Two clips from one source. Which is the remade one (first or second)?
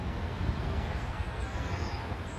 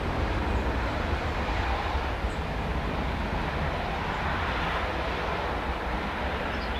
first